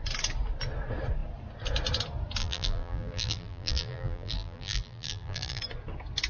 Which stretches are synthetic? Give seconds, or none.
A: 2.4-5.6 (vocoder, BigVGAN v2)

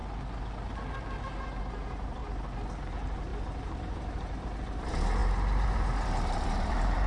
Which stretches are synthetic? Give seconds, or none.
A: 1.6-2.2 (vocoder, BigVGAN v2); 2.9-7.1

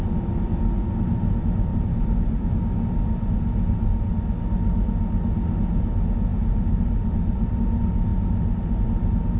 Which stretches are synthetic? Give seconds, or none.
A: 1.7-2.9 (vocoder, BigVGAN v2); 6.3-7.5